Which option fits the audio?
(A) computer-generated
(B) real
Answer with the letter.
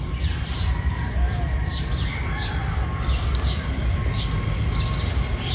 B